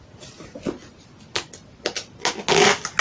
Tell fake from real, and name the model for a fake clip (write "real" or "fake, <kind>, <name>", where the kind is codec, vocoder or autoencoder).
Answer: real